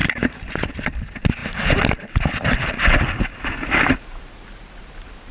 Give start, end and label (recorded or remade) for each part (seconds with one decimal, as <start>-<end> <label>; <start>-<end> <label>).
0.0-0.5 remade; 0.5-5.3 recorded